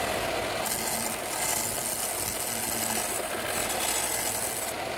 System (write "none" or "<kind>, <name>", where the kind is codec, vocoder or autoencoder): none